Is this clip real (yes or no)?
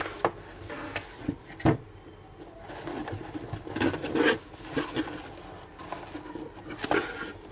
yes